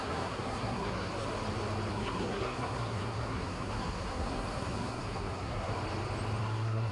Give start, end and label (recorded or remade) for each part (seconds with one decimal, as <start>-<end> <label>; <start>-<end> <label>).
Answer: 0.0-1.1 remade; 1.1-1.9 recorded; 1.9-5.7 remade; 5.7-6.4 recorded; 6.4-6.9 remade